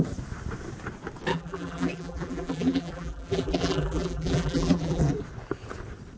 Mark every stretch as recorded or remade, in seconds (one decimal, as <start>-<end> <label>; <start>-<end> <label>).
0.0-1.3 recorded; 1.3-5.0 remade; 5.0-6.2 recorded